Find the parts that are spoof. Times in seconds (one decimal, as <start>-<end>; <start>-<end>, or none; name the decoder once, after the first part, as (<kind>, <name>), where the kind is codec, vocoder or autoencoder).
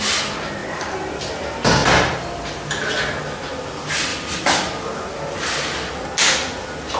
none